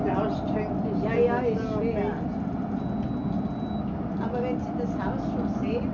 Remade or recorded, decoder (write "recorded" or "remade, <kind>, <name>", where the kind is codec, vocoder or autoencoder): recorded